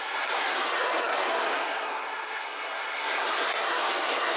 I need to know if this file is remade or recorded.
remade